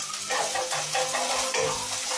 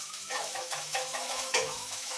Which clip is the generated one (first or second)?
second